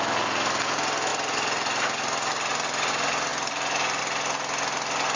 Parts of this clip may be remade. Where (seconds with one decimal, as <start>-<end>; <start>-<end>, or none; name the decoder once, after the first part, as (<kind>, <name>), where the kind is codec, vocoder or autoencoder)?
none

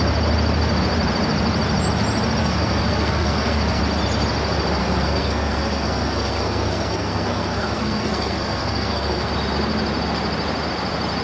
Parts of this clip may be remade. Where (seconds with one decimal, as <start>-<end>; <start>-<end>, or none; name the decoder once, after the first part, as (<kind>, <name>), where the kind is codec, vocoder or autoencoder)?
2.4-3.8 (codec, SNAC); 4.8-9.3